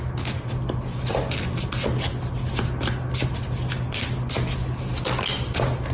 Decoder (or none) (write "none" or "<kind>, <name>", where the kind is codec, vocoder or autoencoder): none